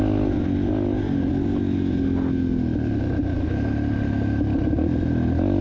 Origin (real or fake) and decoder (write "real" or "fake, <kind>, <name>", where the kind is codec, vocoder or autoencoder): real